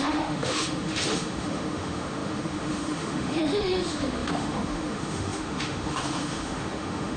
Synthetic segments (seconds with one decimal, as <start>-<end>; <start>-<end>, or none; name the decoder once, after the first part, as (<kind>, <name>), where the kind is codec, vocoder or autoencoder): 0.0-7.2 (autoencoder, DAC-VAE)